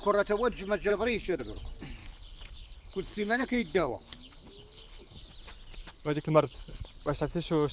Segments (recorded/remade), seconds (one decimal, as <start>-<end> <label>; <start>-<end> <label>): 0.0-0.9 recorded; 0.9-1.4 remade; 1.4-2.0 recorded; 2.0-5.2 remade; 5.2-5.9 recorded; 5.9-6.9 remade; 6.9-7.7 recorded